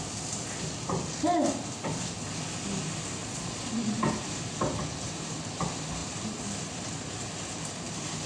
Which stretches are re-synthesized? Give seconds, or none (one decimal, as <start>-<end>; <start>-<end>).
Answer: 3.2-4.0

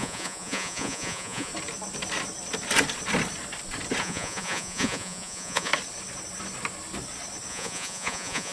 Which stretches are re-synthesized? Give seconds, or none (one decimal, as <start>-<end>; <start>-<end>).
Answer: 0.0-1.5; 4.0-5.7; 7.5-8.5

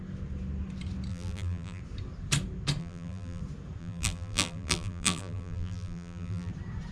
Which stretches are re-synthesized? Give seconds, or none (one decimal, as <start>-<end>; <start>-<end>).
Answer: 1.1-1.8; 2.8-3.4; 3.8-6.5